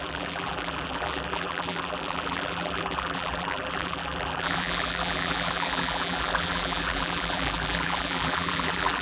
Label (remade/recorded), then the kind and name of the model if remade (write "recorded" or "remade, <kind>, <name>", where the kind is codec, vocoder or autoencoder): remade, vocoder, BigVGAN v2